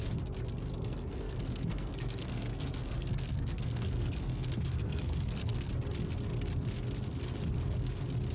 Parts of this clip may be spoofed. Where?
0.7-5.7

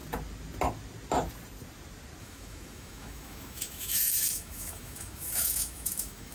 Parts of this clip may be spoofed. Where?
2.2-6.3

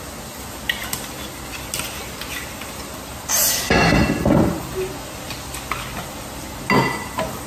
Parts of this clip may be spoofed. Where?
none

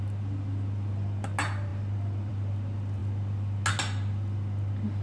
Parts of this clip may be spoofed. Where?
none

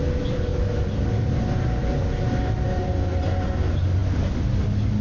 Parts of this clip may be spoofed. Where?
0.5-3.5